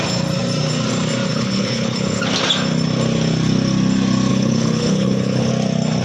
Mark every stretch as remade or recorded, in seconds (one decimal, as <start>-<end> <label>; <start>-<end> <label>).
0.0-1.3 recorded; 1.3-2.2 remade; 2.2-4.3 recorded; 4.3-5.5 remade; 5.5-6.0 recorded